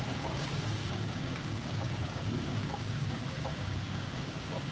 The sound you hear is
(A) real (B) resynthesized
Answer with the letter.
B